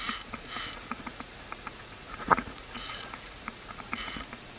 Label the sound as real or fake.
fake